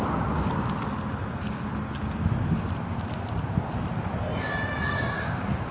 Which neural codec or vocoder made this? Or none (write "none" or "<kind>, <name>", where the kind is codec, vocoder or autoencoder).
none